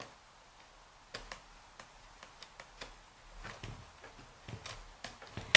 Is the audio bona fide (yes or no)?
yes